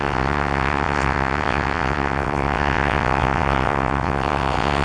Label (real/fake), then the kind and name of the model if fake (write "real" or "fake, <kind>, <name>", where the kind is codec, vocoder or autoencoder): fake, vocoder, WaveNeXt